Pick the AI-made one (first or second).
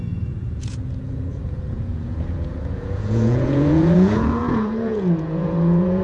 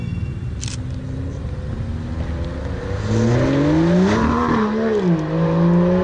first